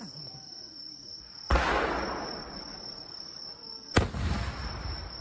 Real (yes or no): yes